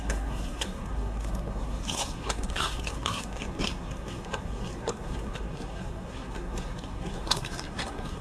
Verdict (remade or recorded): remade